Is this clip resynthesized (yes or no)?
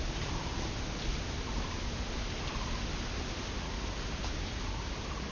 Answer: no